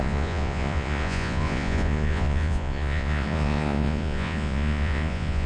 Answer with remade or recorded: remade